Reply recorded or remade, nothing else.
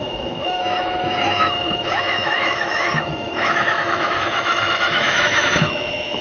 remade